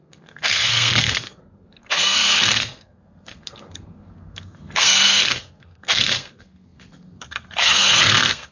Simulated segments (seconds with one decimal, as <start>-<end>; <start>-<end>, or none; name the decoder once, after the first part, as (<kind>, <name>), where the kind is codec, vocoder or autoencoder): 0.0-8.5 (codec, SNAC)